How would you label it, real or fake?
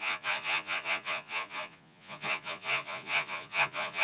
fake